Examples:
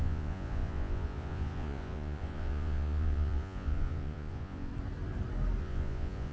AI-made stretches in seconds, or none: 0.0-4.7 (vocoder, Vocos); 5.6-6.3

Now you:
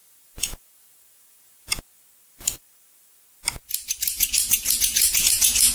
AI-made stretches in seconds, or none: 0.0-1.8 (vocoder, Vocos); 4.1-5.7

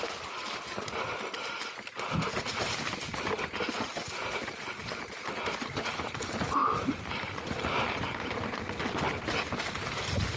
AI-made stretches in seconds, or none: none

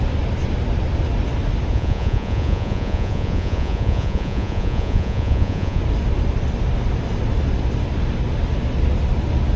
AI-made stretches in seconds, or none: 1.7-5.8 (vocoder, Vocos)

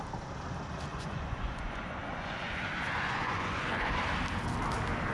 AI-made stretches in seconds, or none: 0.9-4.0 (vocoder, Vocos)

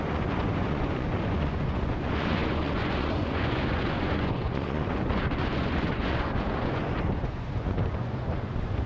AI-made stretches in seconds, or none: 0.0-8.9 (vocoder, Vocos)

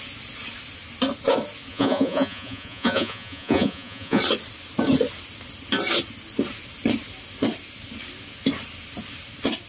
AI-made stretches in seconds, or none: 1.7-4.2 (vocoder, Vocos)

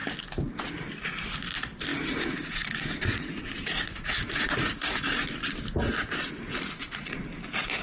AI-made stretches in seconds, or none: 1.9-5.0 (vocoder, Vocos); 5.8-7.2